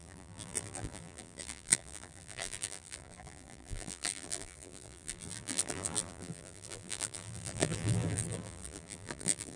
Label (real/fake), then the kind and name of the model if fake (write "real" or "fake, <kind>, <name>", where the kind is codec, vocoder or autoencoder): fake, vocoder, BigVGAN v2